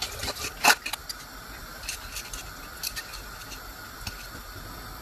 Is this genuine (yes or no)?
yes